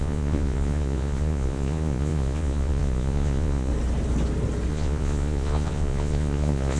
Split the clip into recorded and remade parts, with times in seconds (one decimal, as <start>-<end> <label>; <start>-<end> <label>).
0.0-3.7 remade; 3.7-4.7 recorded; 4.7-6.8 remade